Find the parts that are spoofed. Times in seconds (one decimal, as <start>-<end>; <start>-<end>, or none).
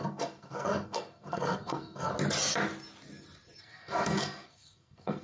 0.0-2.1; 3.6-5.2